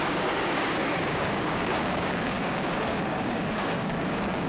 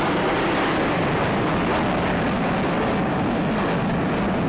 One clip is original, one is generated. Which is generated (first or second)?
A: first